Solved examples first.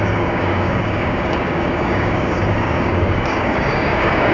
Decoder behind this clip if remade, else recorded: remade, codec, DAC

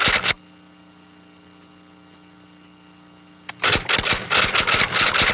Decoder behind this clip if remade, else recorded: recorded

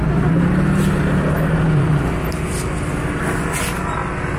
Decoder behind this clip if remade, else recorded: recorded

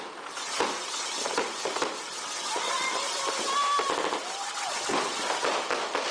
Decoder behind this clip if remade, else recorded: recorded